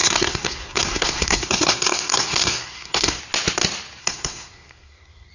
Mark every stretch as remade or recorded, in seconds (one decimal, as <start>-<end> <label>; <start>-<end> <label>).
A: 0.0-3.2 remade; 3.2-4.0 recorded; 4.0-5.3 remade